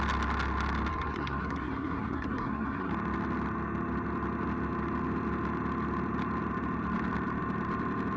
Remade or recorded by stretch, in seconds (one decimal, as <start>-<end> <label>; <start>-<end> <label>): 0.0-0.9 recorded; 0.9-2.9 remade; 2.9-8.2 recorded